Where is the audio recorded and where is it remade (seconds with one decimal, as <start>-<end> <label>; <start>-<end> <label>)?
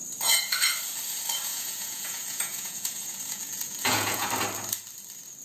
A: 0.0-1.5 recorded; 1.5-4.3 remade; 4.3-5.4 recorded